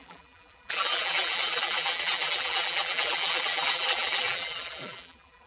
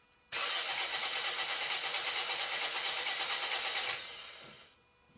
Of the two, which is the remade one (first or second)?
first